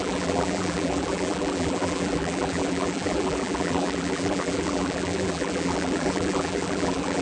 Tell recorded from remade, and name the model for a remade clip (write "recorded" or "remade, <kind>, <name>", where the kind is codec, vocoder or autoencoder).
remade, vocoder, BigVGAN v2